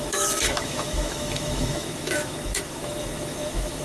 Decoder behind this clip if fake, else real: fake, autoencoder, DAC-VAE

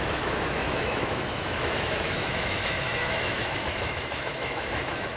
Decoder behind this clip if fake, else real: fake, autoencoder, DAC-VAE